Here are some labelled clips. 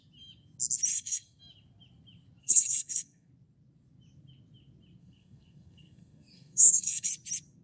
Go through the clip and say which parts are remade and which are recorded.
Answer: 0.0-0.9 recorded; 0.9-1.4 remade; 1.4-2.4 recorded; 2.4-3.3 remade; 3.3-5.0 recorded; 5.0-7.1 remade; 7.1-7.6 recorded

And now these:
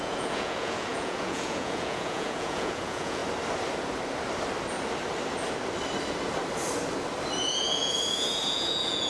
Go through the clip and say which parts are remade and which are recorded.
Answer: 0.0-3.2 remade; 3.2-7.4 recorded; 7.4-9.1 remade